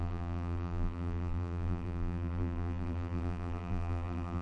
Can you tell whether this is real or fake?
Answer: fake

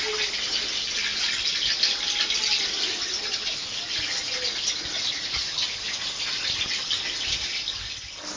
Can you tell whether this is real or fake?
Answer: real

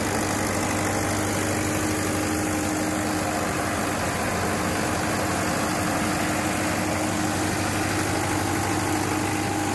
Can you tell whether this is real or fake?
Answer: real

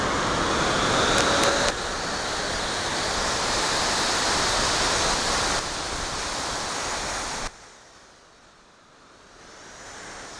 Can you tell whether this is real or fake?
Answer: real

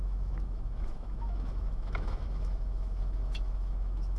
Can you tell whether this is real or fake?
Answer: fake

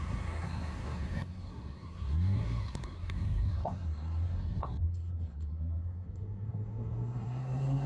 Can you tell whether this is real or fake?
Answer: fake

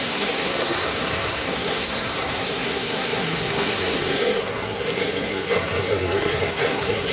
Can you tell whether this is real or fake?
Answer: fake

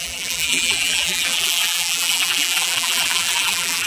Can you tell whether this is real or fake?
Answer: fake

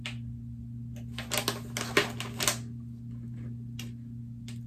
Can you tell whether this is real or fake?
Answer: real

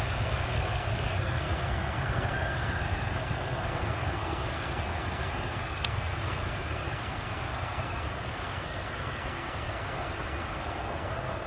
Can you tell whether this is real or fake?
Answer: fake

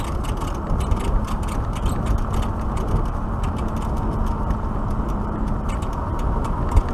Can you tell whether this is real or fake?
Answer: real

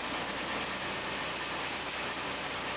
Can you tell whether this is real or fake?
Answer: real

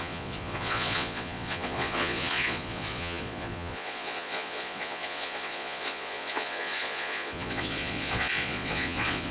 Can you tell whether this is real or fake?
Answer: fake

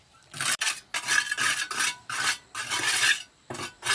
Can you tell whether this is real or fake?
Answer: real